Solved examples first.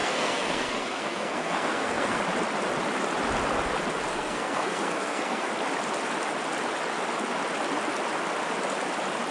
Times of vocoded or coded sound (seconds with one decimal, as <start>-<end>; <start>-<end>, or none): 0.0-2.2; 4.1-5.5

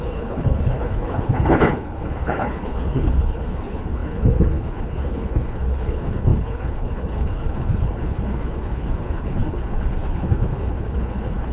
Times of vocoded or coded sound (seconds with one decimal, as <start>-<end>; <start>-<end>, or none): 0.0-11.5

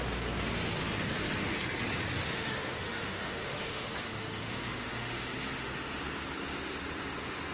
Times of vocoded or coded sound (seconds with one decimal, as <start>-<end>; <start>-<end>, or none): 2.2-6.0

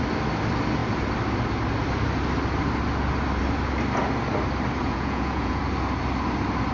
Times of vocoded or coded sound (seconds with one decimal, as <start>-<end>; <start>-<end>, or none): 4.8-5.6

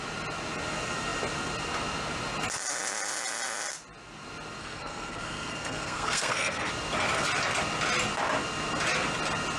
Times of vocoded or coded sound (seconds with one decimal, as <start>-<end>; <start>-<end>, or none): 4.6-6.7